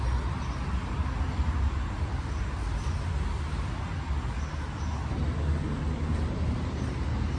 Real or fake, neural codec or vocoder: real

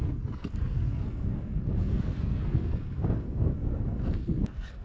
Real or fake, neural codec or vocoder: fake, codec, SNAC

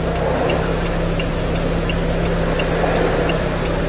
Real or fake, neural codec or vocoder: real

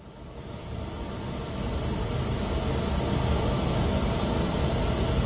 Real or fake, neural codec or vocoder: real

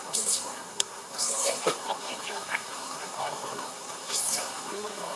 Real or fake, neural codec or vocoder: fake, codec, SNAC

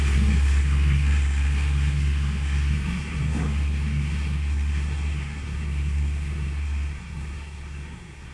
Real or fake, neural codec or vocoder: fake, codec, SNAC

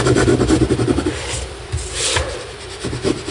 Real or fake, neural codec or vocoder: real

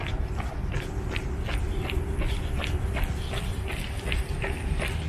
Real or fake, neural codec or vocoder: real